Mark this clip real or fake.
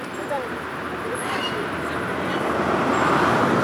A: fake